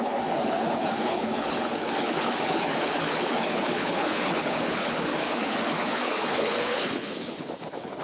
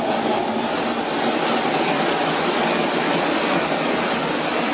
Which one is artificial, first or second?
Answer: first